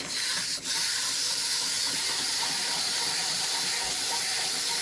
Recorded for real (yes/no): no